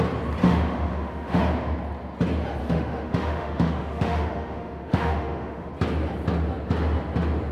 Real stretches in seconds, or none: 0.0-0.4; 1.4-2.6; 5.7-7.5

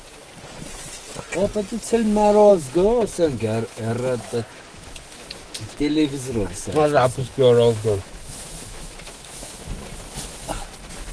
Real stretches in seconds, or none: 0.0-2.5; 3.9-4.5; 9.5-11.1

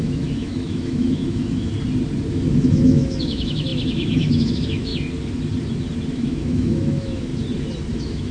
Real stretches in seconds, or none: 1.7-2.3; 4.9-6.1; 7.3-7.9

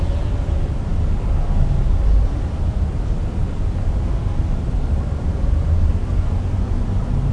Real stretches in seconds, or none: 0.0-7.3

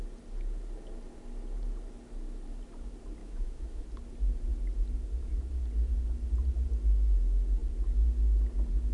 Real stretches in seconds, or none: 0.0-3.2; 3.8-8.9

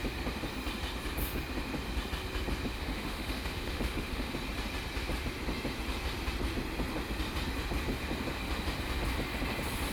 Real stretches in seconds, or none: 0.0-2.7; 4.3-9.9

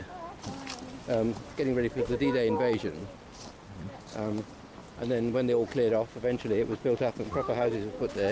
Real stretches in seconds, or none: 0.0-8.3

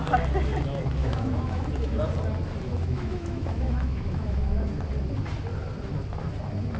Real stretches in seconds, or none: 0.0-1.0; 2.0-2.7; 4.7-6.8